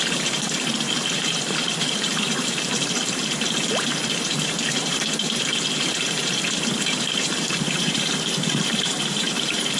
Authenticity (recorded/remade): remade